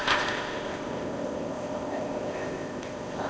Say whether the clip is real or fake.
fake